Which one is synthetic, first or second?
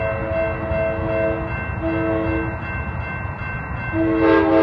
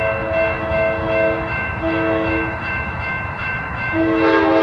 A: second